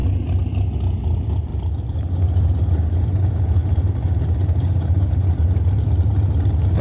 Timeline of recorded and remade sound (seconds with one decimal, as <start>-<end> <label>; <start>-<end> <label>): 0.0-1.0 recorded; 1.0-1.5 remade; 1.5-2.7 recorded; 2.7-6.8 remade